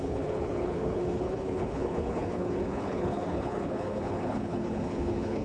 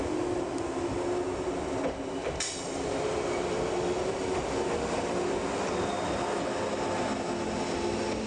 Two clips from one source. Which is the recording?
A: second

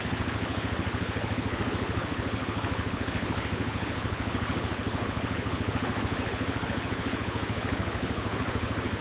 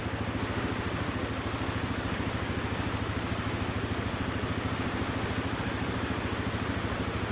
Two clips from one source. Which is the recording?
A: second